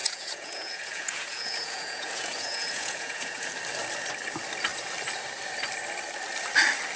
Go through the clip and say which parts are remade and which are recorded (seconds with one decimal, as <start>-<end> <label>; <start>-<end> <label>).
0.0-3.5 remade; 3.5-7.0 recorded

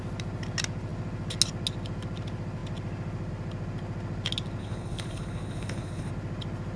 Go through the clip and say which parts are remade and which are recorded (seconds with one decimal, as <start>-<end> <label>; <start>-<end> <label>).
0.0-4.6 recorded; 4.6-6.1 remade; 6.1-6.8 recorded

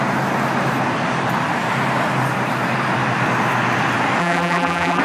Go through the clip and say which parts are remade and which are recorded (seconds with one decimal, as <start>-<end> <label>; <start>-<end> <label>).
0.0-4.2 recorded; 4.2-5.0 remade

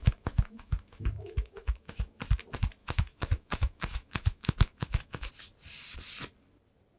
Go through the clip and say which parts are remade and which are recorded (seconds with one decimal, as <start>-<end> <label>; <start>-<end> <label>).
0.0-2.2 remade; 2.2-2.8 recorded; 2.8-5.3 remade; 5.3-7.0 recorded